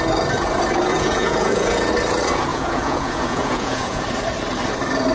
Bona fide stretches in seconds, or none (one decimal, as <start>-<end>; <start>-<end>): 0.0-0.9; 1.9-2.5; 4.0-5.1